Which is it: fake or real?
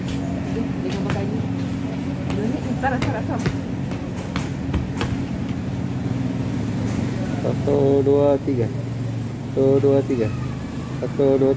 real